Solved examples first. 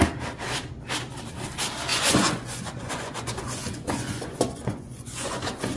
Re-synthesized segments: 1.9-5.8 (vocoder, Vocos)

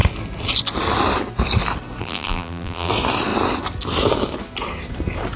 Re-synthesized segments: 2.0-2.9 (vocoder, BigVGAN v2)

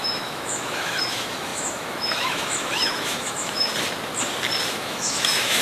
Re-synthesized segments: 0.0-3.7 (autoencoder, DAC-VAE); 4.7-5.6

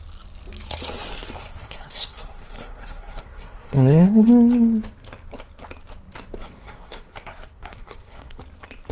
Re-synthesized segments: 1.4-4.3 (codec, SNAC); 6.4-8.4

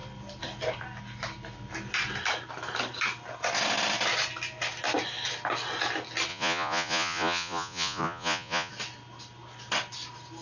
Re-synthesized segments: 6.3-8.7 (vocoder, Vocos)

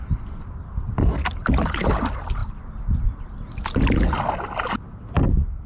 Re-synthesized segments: 1.4-1.9 (vocoder, BigVGAN v2)

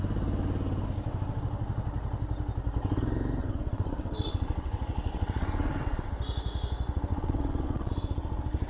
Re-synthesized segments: 3.4-6.1 (vocoder, WaveNeXt); 7.1-7.9